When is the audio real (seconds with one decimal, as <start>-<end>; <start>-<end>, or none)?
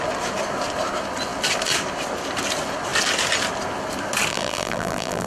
0.0-4.3